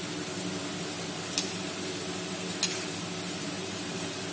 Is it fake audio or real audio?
real